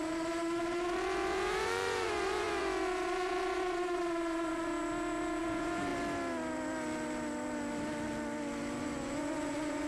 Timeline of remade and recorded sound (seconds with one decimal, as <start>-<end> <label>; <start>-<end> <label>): 0.0-4.7 remade; 4.7-5.4 recorded; 5.4-5.9 remade; 5.9-8.8 recorded; 8.8-9.9 remade